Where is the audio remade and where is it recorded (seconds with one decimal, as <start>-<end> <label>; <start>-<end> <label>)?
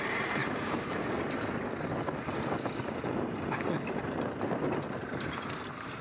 0.0-0.4 remade; 0.4-4.0 recorded; 4.0-6.0 remade